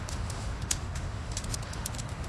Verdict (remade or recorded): remade